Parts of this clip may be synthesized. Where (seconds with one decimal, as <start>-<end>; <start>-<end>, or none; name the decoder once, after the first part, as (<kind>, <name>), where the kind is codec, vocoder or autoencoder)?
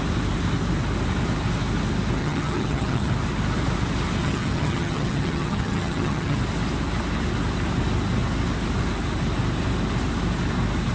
2.2-3.1 (vocoder, HiFi-GAN); 4.2-6.4